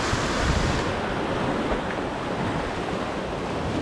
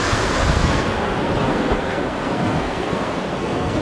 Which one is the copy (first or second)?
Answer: second